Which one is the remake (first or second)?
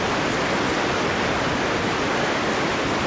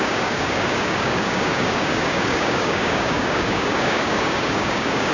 second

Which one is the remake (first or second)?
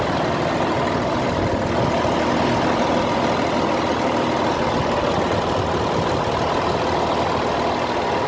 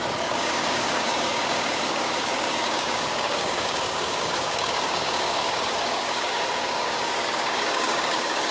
second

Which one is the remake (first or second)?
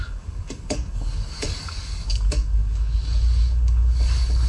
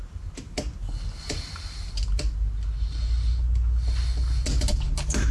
first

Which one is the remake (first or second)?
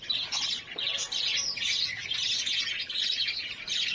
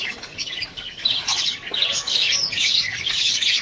second